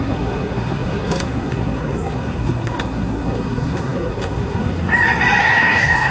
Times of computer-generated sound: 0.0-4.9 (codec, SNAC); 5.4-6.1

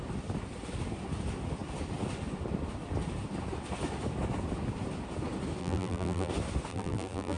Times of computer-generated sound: 5.6-6.3 (vocoder, BigVGAN v2); 6.7-7.4

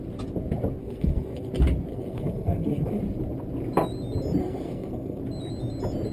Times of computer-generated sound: 0.8-1.5 (codec, SNAC); 1.9-3.0; 4.4-5.2

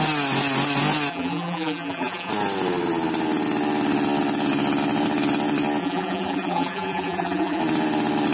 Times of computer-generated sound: 1.1-2.3 (vocoder, BigVGAN v2); 5.8-7.6

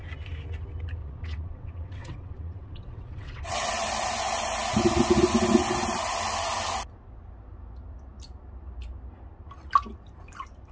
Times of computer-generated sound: 1.0-3.7 (vocoder, WaveNeXt)

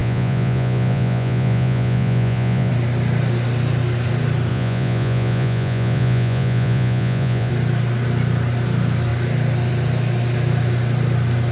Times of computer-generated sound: 0.0-2.7 (vocoder, Vocos); 4.5-7.5